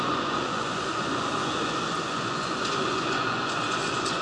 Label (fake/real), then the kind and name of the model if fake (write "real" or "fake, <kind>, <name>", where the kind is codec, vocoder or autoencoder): fake, vocoder, Vocos